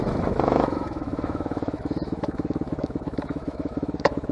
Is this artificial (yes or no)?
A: yes